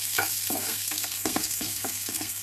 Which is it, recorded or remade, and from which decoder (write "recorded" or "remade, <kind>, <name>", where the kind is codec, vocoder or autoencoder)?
remade, codec, SNAC